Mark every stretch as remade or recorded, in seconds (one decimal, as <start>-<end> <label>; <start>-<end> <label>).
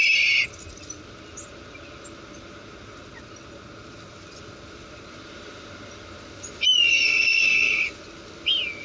0.0-6.9 recorded; 6.9-7.8 remade; 7.8-8.8 recorded